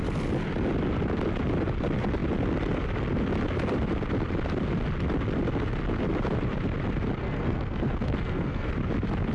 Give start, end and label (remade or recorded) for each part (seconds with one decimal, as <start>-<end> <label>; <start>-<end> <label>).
0.0-7.2 recorded; 7.2-8.7 remade; 8.7-9.3 recorded